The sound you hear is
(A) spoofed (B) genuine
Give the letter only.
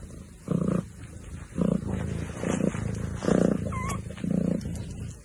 B